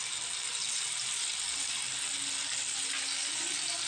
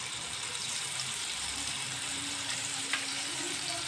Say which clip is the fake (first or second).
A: second